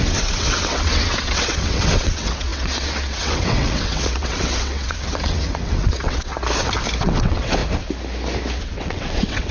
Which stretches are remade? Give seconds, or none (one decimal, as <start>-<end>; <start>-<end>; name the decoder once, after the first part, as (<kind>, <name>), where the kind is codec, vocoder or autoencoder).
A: 0.0-6.3 (vocoder, WaveNeXt); 7.0-7.6; 8.6-9.5